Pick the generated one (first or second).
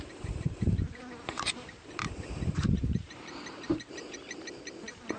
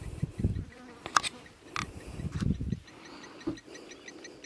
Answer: first